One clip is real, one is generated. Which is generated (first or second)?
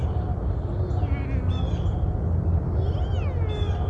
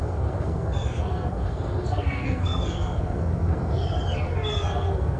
second